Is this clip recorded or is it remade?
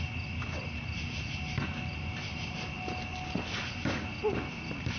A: recorded